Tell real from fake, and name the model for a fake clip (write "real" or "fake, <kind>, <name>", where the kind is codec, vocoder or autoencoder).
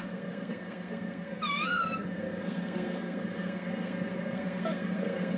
fake, codec, SNAC